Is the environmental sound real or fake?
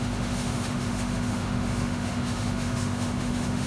fake